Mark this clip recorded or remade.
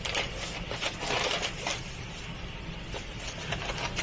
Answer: recorded